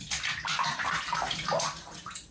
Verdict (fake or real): real